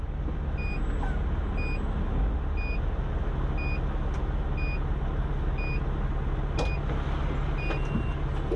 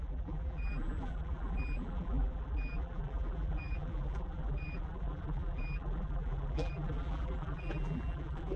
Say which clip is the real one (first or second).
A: first